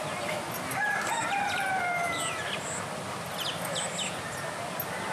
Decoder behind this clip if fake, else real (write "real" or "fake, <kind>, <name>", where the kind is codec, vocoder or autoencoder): real